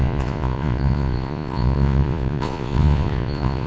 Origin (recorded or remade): remade